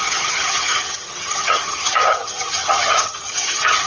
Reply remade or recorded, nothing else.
remade